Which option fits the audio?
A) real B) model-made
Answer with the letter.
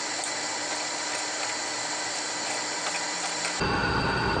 A